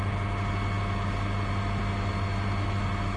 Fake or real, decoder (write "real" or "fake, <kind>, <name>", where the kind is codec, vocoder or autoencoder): real